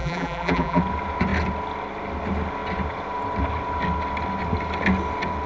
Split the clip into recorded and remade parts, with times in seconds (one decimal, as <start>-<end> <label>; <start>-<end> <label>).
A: 0.0-0.8 remade; 0.8-5.5 recorded